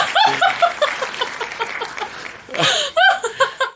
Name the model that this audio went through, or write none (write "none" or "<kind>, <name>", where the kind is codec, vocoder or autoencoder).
vocoder, BigVGAN v2